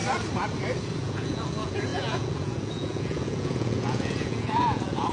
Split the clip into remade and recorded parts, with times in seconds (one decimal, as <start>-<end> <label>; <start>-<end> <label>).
0.0-1.0 recorded; 1.0-5.1 remade